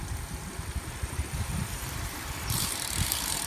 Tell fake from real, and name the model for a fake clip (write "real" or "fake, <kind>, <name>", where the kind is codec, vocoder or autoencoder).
fake, vocoder, BigVGAN v2